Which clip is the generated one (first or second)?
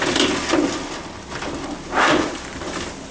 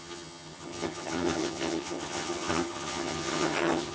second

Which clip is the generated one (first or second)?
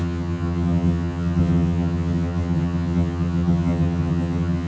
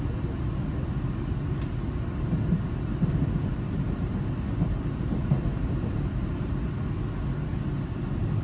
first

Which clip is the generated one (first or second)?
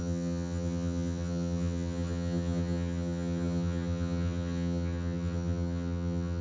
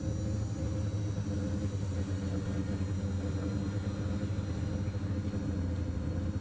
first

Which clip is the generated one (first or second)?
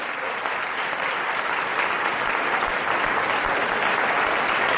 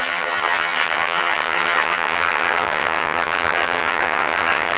second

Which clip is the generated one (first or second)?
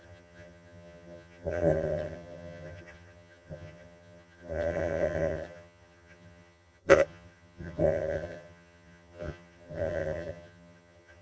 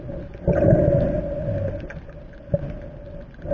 first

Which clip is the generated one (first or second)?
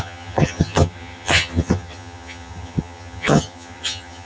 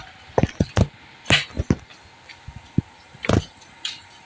first